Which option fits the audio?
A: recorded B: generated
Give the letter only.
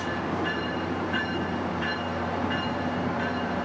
B